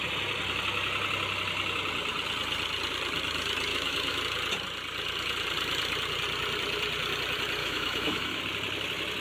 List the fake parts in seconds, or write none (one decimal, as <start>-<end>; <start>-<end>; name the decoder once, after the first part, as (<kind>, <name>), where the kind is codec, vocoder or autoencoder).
3.7-4.2 (autoencoder, DAC-VAE); 7.6-8.4

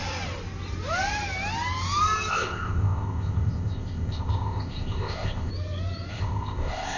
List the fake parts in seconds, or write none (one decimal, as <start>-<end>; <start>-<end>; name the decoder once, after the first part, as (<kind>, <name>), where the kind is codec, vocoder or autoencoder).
2.3-5.5 (codec, ZipCodec); 6.1-7.0

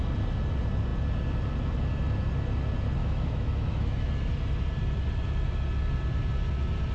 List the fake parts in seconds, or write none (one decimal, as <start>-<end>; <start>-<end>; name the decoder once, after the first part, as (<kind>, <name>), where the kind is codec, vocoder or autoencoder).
3.0-4.1 (autoencoder, DAC-VAE)

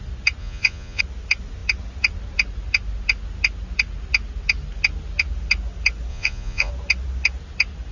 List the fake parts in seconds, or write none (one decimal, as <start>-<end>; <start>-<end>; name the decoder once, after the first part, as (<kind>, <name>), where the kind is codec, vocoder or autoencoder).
0.4-1.0 (vocoder, Vocos); 6.1-6.7

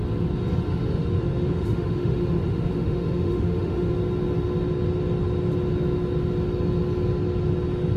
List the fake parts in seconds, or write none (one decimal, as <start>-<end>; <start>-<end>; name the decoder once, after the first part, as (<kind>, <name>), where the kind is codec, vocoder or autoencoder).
0.7-3.9 (autoencoder, DAC-VAE)